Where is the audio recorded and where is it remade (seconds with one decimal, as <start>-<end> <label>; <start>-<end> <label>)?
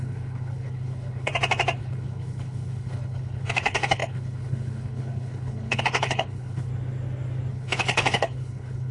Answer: 0.0-1.3 remade; 1.3-1.8 recorded; 1.8-6.7 remade; 6.7-7.5 recorded; 7.5-8.9 remade